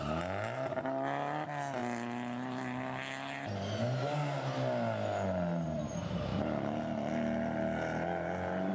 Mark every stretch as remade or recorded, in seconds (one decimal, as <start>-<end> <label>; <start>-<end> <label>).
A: 0.0-8.7 recorded